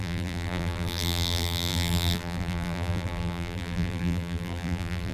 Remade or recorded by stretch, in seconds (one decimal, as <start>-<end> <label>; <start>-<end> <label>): 0.0-5.1 remade